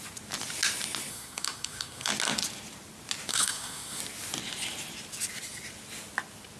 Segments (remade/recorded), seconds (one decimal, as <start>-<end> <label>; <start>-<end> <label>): 0.0-1.1 recorded; 1.1-2.1 remade; 2.1-3.3 recorded; 3.3-4.0 remade; 4.0-6.6 recorded